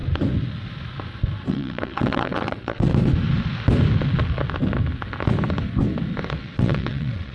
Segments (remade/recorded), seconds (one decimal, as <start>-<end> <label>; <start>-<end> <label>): 0.0-1.5 recorded; 1.5-2.9 remade; 2.9-6.4 recorded; 6.4-7.3 remade